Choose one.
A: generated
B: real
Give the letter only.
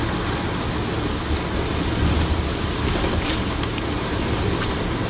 B